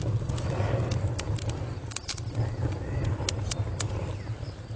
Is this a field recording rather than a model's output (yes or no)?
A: yes